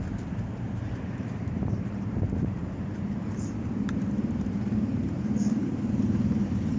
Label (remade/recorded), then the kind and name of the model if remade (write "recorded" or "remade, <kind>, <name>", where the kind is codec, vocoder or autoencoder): remade, vocoder, BigVGAN v2